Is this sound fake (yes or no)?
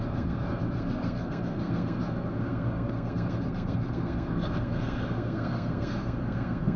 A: yes